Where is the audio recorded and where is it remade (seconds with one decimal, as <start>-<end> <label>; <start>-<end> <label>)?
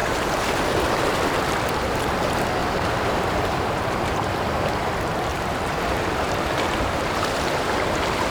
0.0-0.9 remade; 0.9-2.6 recorded; 2.6-4.7 remade; 4.7-5.3 recorded; 5.3-7.6 remade; 7.6-8.3 recorded